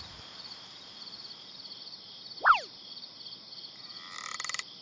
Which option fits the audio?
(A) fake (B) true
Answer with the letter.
B